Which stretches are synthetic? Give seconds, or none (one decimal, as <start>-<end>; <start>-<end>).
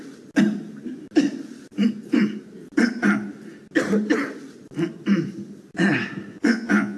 6.3-7.0